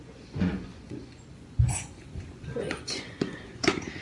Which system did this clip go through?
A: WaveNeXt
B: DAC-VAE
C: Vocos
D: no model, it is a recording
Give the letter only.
C